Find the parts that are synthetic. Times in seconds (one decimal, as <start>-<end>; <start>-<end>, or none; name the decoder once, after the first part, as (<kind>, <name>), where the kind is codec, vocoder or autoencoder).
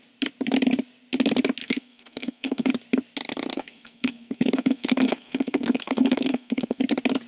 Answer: 1.6-2.7 (codec, SNAC); 3.5-6.8